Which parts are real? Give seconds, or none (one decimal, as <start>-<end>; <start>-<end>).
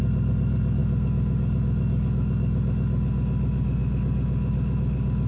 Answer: 0.0-5.3